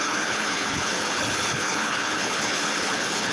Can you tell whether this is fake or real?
fake